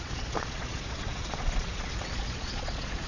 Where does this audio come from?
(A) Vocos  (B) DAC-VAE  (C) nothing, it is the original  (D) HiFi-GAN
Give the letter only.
A